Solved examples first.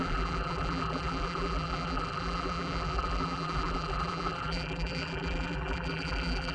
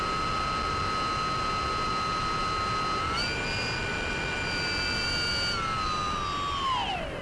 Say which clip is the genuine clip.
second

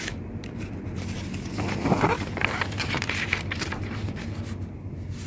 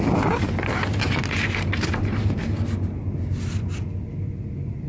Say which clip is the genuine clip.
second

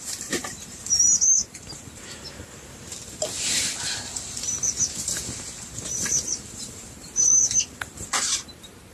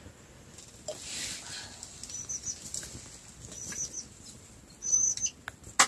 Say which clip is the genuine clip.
second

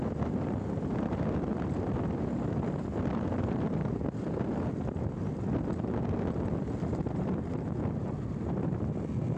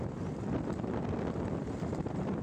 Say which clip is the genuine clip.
first